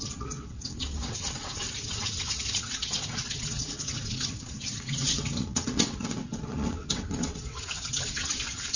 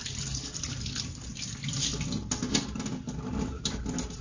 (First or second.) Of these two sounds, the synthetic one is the first